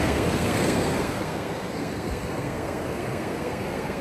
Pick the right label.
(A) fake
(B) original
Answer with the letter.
A